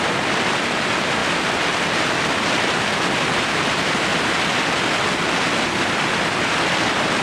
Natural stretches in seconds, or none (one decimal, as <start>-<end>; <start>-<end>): 1.2-3.5; 4.1-5.9